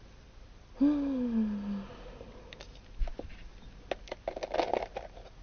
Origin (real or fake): real